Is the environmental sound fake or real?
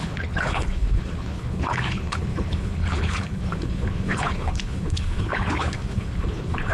fake